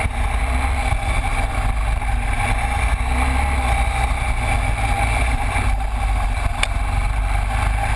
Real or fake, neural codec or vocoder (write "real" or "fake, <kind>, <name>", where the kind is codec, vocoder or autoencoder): real